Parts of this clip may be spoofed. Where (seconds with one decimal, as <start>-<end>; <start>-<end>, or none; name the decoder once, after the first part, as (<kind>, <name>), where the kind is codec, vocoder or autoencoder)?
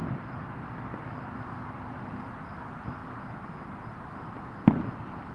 none